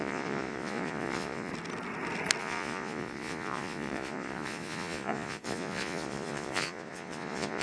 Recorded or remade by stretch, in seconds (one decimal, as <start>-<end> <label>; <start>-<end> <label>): 0.0-1.5 remade; 1.5-2.4 recorded; 2.4-7.6 remade